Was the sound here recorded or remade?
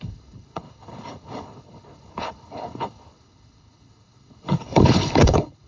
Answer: remade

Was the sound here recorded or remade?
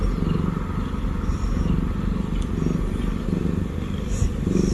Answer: recorded